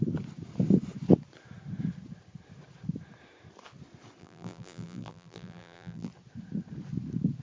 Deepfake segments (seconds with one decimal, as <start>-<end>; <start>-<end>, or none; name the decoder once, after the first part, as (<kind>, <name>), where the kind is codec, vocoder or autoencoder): 4.2-6.1 (vocoder, BigVGAN v2)